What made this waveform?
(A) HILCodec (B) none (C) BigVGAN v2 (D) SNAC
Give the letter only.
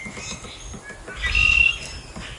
B